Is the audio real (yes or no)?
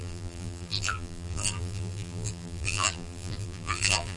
no